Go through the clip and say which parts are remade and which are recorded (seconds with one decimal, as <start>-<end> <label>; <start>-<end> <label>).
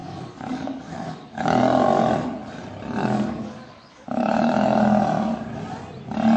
0.0-1.6 remade; 1.6-3.0 recorded; 3.0-4.8 remade; 4.8-6.4 recorded